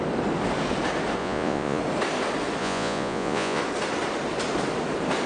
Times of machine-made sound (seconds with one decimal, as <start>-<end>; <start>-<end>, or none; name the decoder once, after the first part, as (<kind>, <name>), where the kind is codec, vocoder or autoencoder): 1.2-1.8 (vocoder, Vocos); 2.6-3.6